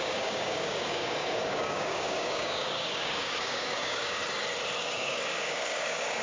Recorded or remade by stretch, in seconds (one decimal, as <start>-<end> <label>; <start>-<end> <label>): 0.0-4.2 remade; 4.2-4.8 recorded; 4.8-6.2 remade